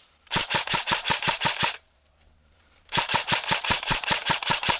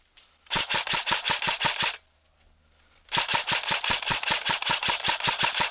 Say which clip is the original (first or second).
second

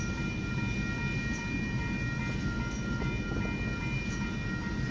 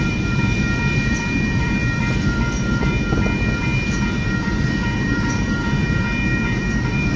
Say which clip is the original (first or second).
first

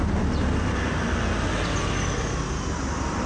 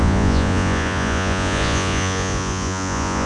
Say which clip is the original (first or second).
first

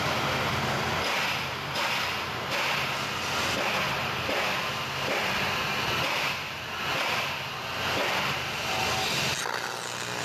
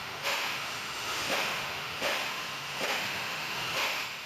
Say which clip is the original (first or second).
first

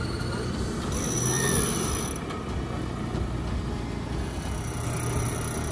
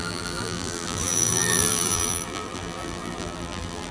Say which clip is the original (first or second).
first